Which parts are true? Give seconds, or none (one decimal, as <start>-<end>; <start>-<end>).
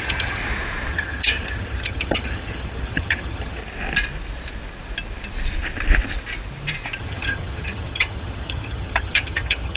0.4-0.9; 3.6-7.0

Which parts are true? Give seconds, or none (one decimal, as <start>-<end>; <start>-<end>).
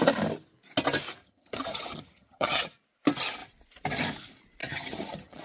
0.0-1.2; 2.7-4.6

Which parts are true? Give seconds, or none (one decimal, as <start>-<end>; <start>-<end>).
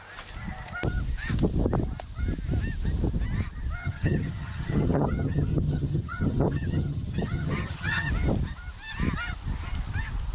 0.0-3.8; 8.1-10.3